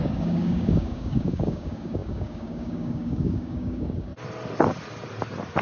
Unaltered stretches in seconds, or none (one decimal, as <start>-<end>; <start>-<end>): 4.1-5.6